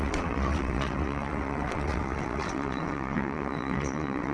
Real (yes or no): no